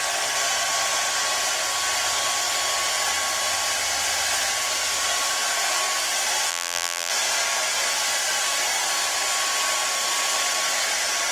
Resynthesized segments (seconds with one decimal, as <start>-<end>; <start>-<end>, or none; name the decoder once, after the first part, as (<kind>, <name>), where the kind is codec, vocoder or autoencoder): 6.5-7.1 (vocoder, BigVGAN v2)